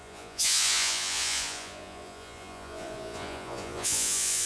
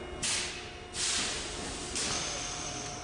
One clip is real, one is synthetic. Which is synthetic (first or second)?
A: first